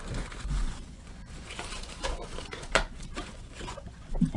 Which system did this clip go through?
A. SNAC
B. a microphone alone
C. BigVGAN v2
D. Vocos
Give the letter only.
D